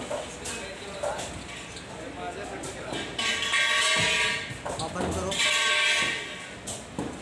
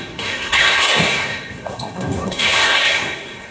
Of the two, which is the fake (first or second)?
second